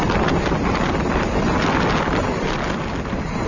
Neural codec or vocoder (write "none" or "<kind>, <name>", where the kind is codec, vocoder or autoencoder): none